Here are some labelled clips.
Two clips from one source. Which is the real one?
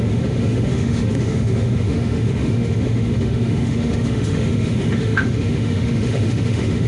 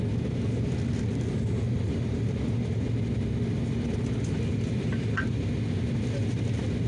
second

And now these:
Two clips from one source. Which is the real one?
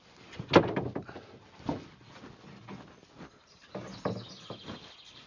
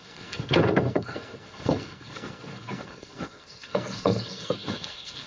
first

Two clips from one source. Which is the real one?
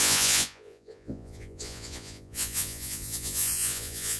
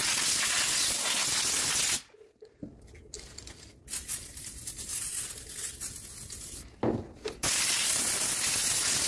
second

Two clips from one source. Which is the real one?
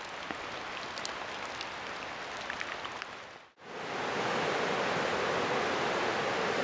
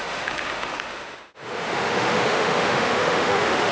first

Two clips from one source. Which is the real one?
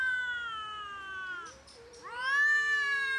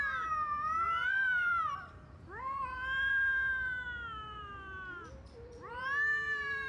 first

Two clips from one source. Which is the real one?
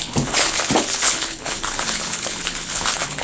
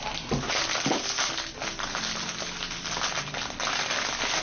second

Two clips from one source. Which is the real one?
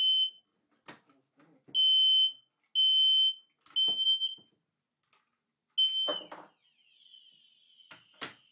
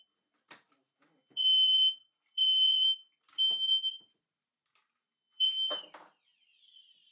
first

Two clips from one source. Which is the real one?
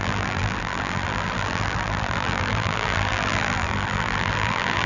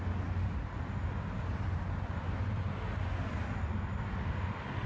second